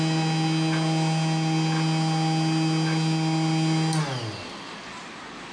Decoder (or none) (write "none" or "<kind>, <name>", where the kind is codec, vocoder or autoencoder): none